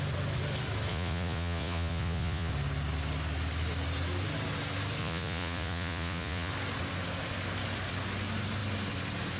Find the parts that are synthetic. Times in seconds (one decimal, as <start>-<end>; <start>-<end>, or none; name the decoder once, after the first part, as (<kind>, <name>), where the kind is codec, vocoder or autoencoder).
0.9-2.5 (vocoder, Vocos); 5.0-6.5